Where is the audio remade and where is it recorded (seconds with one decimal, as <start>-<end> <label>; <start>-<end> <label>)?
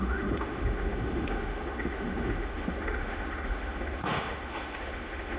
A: 0.0-5.4 remade